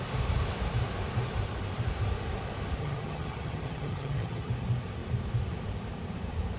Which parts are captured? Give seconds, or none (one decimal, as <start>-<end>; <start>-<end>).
0.0-2.8; 4.5-6.6